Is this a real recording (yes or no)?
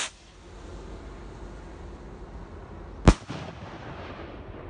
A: yes